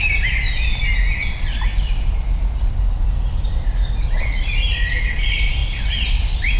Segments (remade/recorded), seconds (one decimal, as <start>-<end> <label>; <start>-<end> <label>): 0.0-6.6 recorded